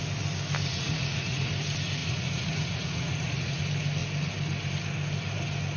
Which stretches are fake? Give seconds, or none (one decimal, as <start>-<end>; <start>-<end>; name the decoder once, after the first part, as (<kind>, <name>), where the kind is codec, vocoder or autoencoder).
0.7-1.5 (vocoder, Vocos); 2.0-3.6